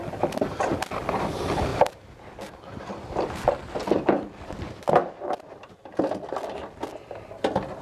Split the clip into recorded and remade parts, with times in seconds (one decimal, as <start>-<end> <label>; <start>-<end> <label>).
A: 0.0-1.7 recorded; 1.7-3.7 remade; 3.7-5.0 recorded; 5.0-5.9 remade; 5.9-7.8 recorded